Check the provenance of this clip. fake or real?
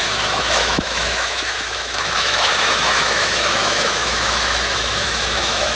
fake